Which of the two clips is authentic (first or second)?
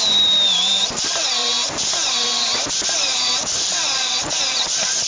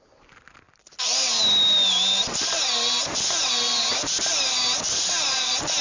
second